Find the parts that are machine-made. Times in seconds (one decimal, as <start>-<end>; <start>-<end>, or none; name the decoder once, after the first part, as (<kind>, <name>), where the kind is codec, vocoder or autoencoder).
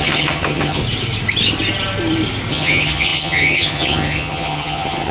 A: 0.0-0.8 (vocoder, HiFi-GAN); 2.5-5.1